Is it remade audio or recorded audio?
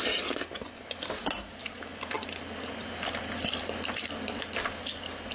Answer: recorded